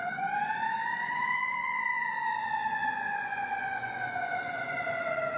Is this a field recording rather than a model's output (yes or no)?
no